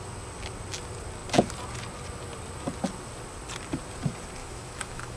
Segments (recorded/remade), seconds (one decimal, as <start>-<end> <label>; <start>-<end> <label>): 0.0-4.4 recorded; 4.4-5.2 remade